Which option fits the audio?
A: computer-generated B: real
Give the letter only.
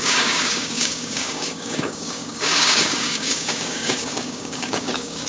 A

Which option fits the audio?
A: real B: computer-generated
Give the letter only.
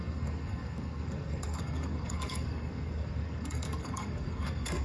B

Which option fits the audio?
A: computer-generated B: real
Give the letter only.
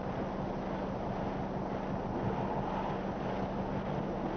B